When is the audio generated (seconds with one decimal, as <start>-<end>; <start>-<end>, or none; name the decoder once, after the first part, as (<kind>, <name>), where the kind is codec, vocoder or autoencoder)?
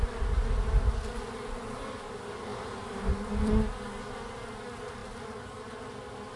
2.5-3.1 (vocoder, BigVGAN v2); 5.0-5.9